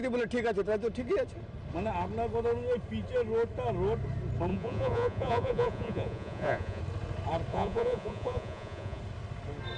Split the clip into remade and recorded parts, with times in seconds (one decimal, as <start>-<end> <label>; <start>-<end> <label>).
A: 0.0-4.5 recorded; 4.5-6.8 remade; 6.8-7.5 recorded; 7.5-9.0 remade; 9.0-9.8 recorded